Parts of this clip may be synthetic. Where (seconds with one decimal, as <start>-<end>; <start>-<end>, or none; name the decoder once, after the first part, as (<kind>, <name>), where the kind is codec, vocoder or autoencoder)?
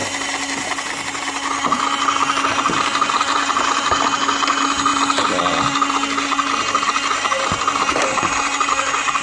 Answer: none